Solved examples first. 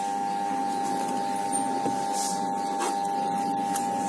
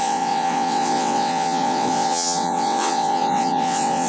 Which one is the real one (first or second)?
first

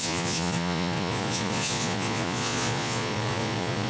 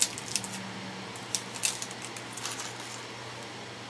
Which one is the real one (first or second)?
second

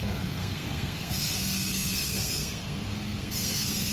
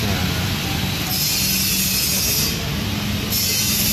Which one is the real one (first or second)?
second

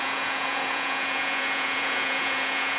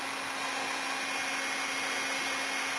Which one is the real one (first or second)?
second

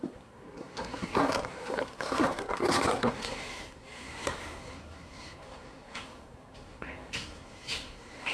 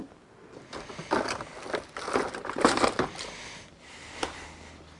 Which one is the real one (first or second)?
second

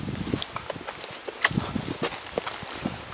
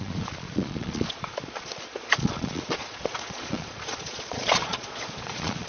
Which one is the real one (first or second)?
first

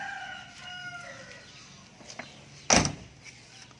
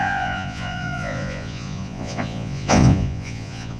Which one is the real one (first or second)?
first